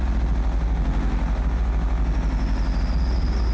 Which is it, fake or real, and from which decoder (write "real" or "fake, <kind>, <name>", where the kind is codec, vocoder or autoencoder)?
real